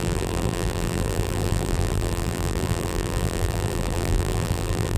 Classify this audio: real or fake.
fake